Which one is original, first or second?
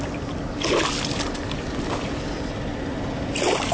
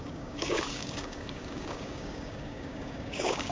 first